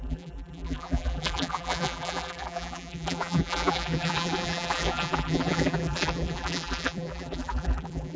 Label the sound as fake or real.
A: fake